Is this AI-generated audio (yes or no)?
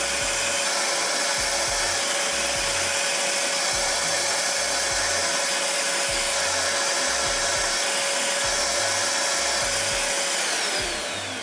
no